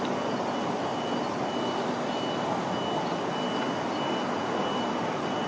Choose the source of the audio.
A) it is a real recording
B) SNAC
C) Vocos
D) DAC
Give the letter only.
A